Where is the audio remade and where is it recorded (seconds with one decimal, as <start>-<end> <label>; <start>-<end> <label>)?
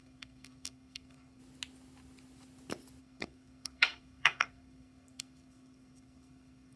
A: 0.0-1.4 remade; 1.4-3.0 recorded; 3.0-6.8 remade